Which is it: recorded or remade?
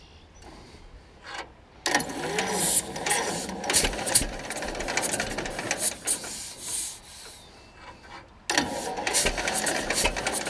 recorded